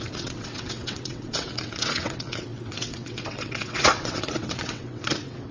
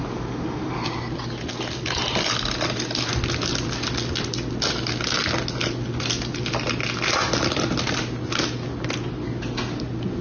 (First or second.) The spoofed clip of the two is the first